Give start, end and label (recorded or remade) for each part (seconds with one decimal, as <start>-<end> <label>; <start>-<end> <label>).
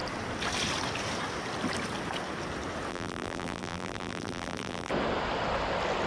0.0-2.9 recorded; 2.9-4.9 remade; 4.9-6.1 recorded